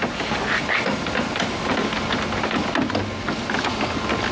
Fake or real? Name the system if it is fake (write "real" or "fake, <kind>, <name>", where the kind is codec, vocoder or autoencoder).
real